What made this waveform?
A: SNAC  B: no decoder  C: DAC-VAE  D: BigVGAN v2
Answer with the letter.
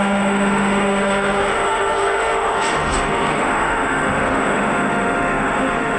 C